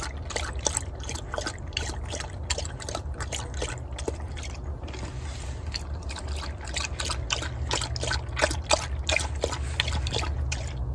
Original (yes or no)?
yes